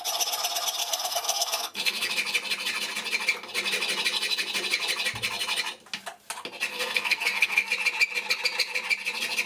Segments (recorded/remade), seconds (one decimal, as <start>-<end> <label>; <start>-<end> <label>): 0.0-0.8 recorded; 0.8-2.1 remade; 2.1-6.7 recorded; 6.7-7.7 remade; 7.7-9.5 recorded